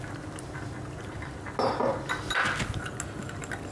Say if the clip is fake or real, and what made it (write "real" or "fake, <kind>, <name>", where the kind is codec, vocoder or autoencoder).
real